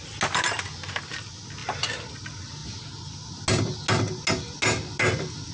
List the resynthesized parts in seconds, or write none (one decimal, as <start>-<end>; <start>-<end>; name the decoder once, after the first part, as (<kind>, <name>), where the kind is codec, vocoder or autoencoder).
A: none